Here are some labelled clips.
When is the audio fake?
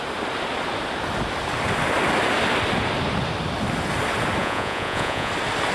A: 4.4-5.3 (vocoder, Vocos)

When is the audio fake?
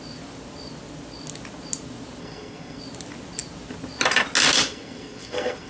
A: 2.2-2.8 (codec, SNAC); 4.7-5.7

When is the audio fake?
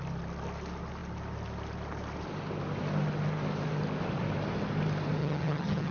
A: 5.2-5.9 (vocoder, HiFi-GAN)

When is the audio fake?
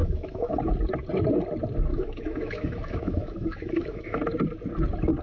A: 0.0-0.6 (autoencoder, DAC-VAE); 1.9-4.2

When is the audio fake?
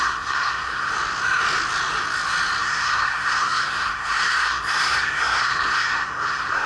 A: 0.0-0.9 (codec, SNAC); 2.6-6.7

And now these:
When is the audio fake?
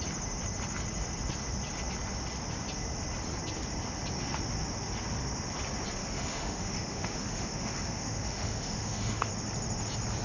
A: 6.0-9.3 (autoencoder, DAC-VAE)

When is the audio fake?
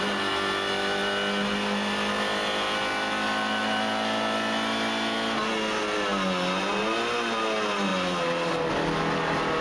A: none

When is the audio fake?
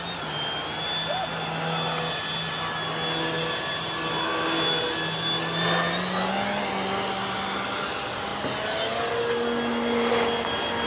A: none